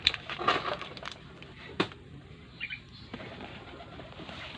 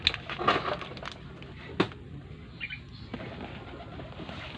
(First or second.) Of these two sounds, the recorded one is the second